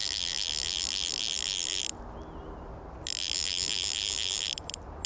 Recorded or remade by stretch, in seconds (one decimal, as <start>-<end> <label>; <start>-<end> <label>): 0.0-5.1 recorded